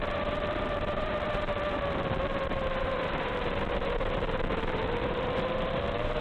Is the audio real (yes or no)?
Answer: no